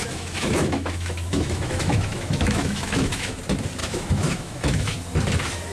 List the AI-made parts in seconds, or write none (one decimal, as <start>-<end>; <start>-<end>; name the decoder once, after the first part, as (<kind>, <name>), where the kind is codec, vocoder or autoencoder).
0.0-3.4 (autoencoder, DAC-VAE); 3.8-5.0